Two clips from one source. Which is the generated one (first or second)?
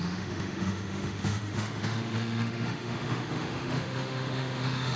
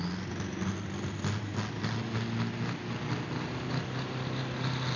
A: first